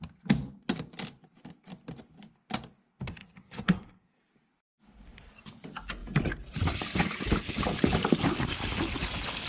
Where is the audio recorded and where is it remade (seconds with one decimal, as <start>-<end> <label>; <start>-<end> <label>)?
0.0-3.2 recorded; 3.2-4.2 remade; 4.2-9.5 recorded